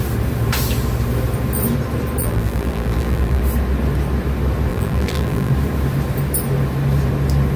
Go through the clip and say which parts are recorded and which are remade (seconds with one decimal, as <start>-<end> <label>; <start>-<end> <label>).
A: 0.0-2.2 recorded; 2.2-3.4 remade; 3.4-4.7 recorded; 4.7-5.5 remade; 5.5-7.6 recorded